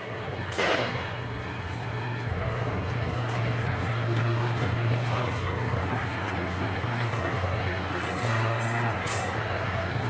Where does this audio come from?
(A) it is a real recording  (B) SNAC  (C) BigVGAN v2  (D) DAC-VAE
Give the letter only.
B